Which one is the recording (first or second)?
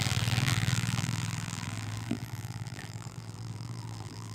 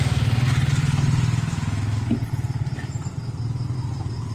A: second